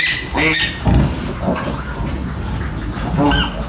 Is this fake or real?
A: real